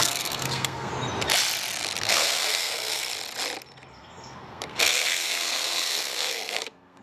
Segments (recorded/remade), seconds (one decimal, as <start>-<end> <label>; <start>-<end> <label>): 0.0-0.9 remade; 0.9-2.0 recorded; 2.0-3.1 remade; 3.1-3.9 recorded; 3.9-7.0 remade